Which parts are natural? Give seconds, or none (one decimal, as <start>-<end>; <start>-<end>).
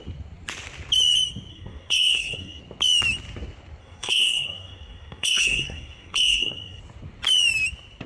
0.0-1.5; 2.6-3.8; 6.8-8.1